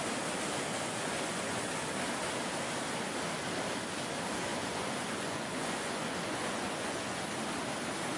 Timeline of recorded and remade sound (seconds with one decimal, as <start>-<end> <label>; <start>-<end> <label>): 0.0-0.7 recorded; 0.7-1.7 remade; 1.7-4.5 recorded; 4.5-7.2 remade; 7.2-8.2 recorded